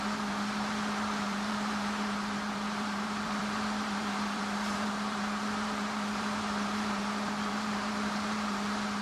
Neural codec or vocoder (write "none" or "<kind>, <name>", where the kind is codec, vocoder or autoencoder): vocoder, BigVGAN v2